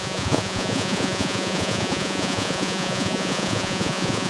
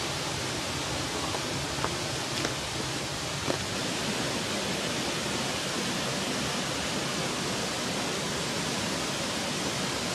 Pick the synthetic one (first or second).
first